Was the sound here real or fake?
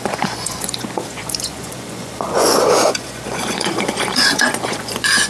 fake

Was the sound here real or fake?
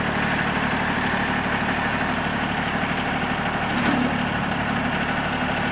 real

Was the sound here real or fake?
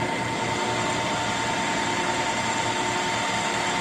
real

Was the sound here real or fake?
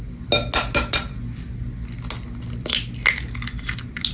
real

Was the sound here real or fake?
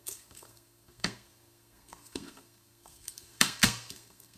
fake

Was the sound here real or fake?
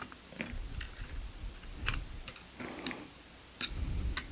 real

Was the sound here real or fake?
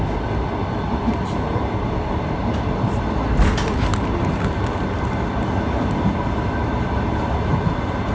real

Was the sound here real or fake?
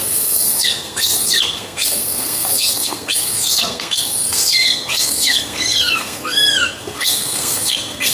fake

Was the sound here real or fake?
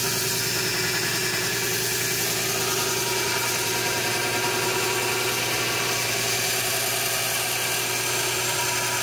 real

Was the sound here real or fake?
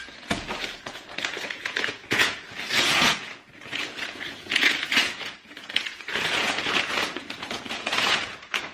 fake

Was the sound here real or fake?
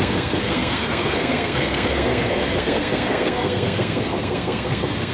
fake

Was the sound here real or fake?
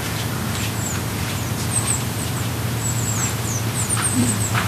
fake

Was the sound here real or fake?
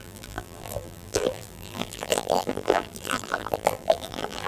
fake